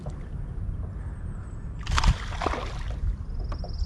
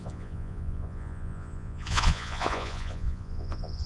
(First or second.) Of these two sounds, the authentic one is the first